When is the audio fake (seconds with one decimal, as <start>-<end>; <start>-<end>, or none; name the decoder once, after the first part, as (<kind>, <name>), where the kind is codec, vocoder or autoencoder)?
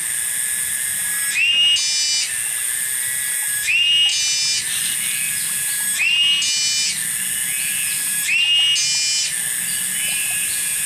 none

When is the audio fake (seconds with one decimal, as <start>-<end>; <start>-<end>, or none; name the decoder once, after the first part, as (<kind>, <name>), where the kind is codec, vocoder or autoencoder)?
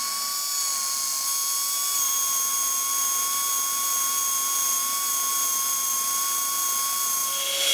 none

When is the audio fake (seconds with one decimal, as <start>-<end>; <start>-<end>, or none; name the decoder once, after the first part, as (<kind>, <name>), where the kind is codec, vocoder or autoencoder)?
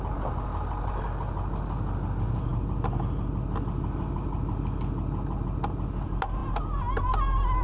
none